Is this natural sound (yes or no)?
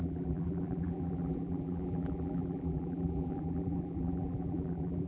no